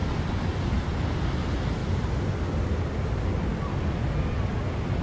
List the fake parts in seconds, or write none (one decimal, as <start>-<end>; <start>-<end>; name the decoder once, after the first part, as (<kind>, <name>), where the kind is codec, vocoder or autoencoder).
none